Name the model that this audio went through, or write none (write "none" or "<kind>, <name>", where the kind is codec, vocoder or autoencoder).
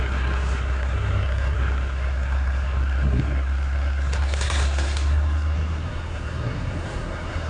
codec, SNAC